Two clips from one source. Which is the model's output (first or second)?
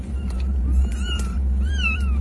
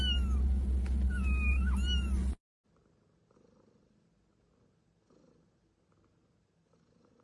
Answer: first